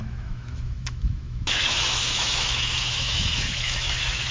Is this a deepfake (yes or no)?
yes